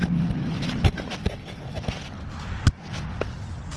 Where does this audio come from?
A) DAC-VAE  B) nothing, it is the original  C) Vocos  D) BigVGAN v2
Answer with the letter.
B